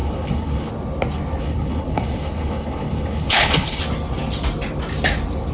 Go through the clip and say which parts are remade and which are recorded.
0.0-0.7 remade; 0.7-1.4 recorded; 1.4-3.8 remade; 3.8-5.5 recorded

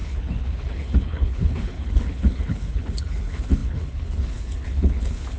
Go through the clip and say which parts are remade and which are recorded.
0.0-5.4 remade

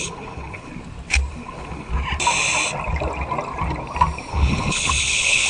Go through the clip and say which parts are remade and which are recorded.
0.0-0.7 remade; 0.7-1.3 recorded; 1.3-1.9 remade; 1.9-4.3 recorded; 4.3-5.5 remade

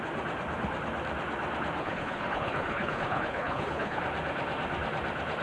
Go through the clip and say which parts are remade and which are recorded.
0.0-1.8 recorded; 1.8-4.0 remade; 4.0-5.4 recorded

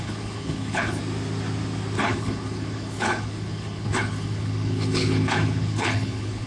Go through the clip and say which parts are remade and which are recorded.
0.0-1.0 remade; 1.0-2.0 recorded; 2.0-6.5 remade

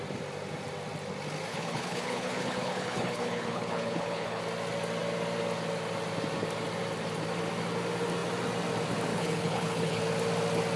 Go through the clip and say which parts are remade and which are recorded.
0.0-1.5 recorded; 1.5-4.4 remade; 4.4-9.1 recorded; 9.1-10.0 remade; 10.0-10.8 recorded

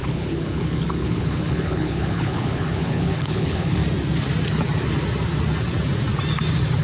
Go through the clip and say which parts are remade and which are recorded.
0.0-3.8 remade; 3.8-6.8 recorded

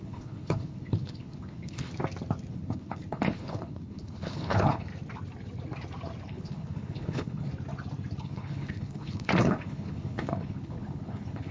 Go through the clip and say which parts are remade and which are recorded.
0.0-1.9 remade; 1.9-2.5 recorded; 2.5-4.9 remade; 4.9-6.2 recorded; 6.2-7.5 remade; 7.5-8.2 recorded; 8.2-11.5 remade